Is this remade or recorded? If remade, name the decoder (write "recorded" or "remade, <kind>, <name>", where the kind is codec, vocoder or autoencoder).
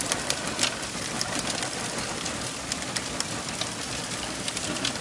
remade, vocoder, BigVGAN v2